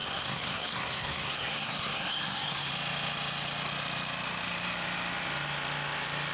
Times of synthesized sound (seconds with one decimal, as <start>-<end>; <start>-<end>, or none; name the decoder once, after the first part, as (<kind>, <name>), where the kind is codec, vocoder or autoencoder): 0.0-2.7 (codec, SNAC)